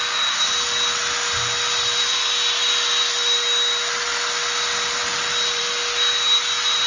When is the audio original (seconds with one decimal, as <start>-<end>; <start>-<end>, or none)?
0.0-6.9